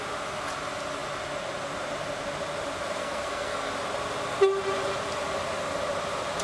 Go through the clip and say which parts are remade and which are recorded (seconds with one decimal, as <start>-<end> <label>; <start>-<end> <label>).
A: 0.0-3.0 recorded; 3.0-3.7 remade; 3.7-6.4 recorded